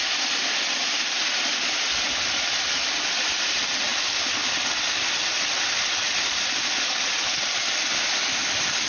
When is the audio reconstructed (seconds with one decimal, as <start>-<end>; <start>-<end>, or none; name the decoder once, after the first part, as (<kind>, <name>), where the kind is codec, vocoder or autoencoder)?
none